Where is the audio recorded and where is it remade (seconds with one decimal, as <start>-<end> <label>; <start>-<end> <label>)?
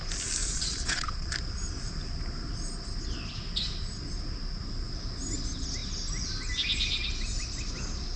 0.0-0.4 recorded; 0.4-1.3 remade; 1.3-8.2 recorded